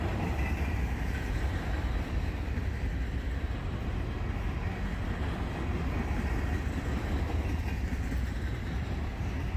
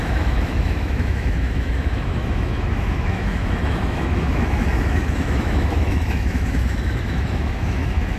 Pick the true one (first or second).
first